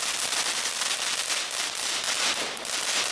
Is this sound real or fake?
real